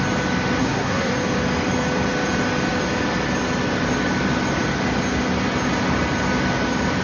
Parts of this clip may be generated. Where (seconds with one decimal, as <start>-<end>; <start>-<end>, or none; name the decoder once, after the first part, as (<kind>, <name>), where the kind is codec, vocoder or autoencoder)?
0.6-1.1 (codec, SNAC)